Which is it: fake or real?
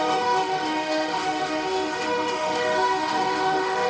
fake